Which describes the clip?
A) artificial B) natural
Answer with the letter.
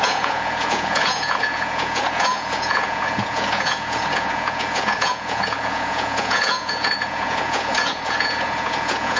A